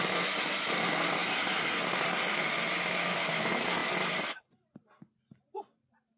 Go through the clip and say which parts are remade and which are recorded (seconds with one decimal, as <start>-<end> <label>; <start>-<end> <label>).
0.0-6.2 recorded